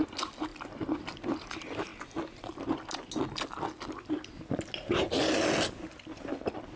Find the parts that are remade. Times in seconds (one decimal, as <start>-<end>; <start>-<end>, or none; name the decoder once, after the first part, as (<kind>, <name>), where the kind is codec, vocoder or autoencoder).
none